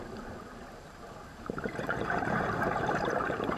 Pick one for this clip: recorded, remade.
remade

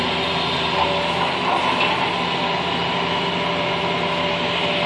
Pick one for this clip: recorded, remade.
recorded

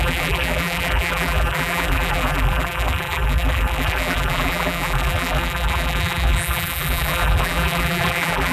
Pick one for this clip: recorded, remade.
remade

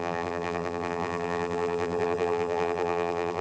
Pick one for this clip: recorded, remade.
remade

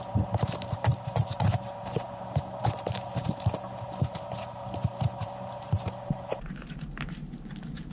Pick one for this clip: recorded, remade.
remade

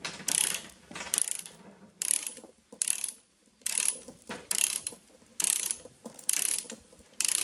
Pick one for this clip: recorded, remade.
remade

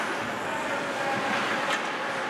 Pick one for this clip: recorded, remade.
recorded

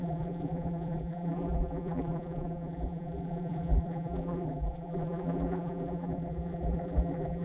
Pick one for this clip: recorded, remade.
remade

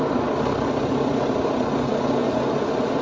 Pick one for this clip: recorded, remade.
recorded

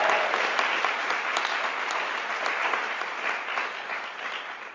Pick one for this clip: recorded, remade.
recorded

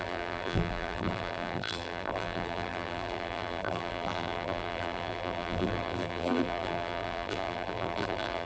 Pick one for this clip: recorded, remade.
remade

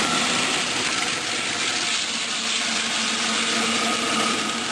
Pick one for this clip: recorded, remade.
recorded